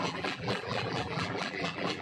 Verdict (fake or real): fake